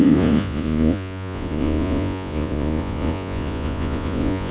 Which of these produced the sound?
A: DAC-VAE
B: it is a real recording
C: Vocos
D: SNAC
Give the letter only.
C